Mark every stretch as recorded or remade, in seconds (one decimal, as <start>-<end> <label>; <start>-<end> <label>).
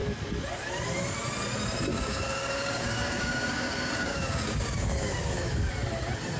0.0-1.9 recorded; 1.9-5.7 remade; 5.7-6.4 recorded